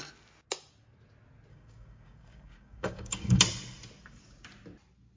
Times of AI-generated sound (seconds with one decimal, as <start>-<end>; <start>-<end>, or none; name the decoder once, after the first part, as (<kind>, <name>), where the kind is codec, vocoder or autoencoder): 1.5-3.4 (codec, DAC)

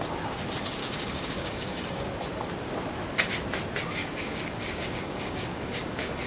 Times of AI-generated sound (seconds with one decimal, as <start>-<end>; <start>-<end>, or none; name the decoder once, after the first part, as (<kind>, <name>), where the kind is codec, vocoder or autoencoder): 0.8-2.1 (codec, DAC); 4.0-6.3

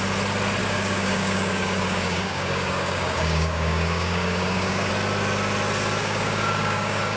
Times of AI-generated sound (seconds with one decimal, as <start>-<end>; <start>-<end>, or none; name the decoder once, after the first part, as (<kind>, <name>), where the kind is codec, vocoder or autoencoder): 0.6-4.9 (codec, DAC); 6.0-7.2

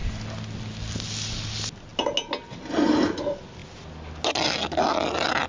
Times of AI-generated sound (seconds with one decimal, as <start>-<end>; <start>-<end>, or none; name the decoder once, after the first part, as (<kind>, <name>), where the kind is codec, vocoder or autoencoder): none

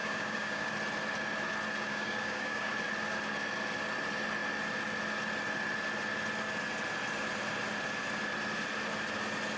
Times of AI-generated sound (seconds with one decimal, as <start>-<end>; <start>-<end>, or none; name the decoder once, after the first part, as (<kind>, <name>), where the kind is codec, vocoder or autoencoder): 0.0-0.7 (codec, DAC); 1.9-2.7

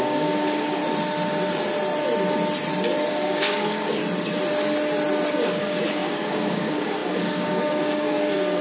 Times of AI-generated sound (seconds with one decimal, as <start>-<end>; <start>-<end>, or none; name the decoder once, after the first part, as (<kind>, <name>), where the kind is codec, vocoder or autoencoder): 0.0-0.8 (codec, DAC); 3.1-4.0; 5.3-8.6

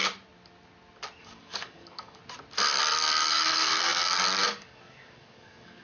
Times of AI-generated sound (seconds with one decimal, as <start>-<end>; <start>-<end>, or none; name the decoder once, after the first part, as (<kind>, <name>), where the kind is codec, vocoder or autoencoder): 1.2-2.2 (codec, DAC); 2.8-5.8

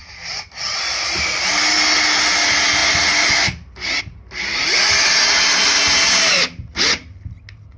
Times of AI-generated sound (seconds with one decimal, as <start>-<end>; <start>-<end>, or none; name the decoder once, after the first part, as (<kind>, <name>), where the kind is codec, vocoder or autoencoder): none